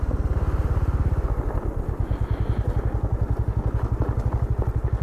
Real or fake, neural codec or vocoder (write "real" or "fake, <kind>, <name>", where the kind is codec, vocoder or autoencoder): real